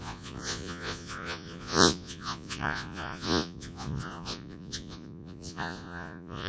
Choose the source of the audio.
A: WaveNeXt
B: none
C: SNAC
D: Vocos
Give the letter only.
D